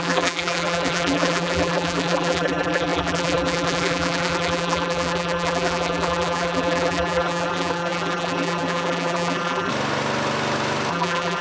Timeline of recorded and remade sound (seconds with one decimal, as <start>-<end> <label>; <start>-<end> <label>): 0.0-9.7 remade; 9.7-10.9 recorded; 10.9-11.4 remade